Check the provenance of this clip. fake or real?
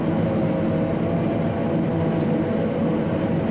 real